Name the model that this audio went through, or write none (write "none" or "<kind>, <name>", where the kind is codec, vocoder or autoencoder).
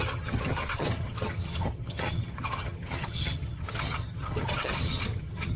vocoder, HiFi-GAN